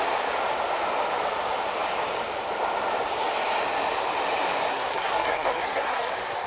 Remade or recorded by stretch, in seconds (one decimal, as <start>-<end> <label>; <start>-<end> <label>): 0.0-4.7 recorded; 4.7-6.1 remade; 6.1-6.5 recorded